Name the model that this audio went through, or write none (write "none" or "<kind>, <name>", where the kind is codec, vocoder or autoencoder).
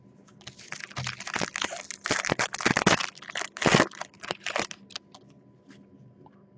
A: none